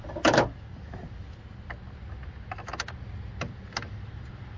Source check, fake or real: real